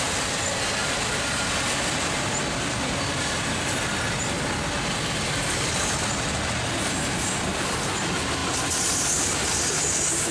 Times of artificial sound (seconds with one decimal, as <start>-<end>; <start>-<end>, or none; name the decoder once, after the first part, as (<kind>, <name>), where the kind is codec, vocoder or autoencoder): 8.4-10.3 (vocoder, BigVGAN v2)